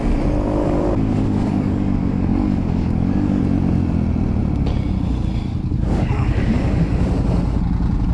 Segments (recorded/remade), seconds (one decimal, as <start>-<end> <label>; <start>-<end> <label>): 0.0-0.6 recorded; 0.6-3.4 remade; 3.4-5.7 recorded; 5.7-7.1 remade; 7.1-8.1 recorded